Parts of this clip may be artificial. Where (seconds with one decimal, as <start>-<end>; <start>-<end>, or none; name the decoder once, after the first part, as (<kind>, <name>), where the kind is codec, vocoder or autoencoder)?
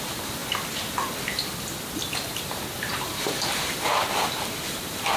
0.0-0.4 (vocoder, BigVGAN v2); 2.3-5.2